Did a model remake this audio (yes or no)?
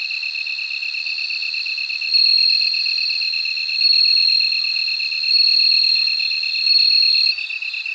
no